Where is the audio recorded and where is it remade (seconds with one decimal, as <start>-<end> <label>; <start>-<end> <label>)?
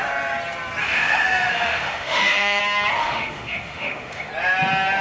0.0-0.8 recorded; 0.8-2.6 remade; 2.6-3.0 recorded; 3.0-4.3 remade; 4.3-5.0 recorded